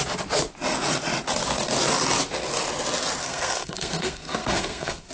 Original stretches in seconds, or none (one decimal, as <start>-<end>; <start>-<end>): 0.0-3.2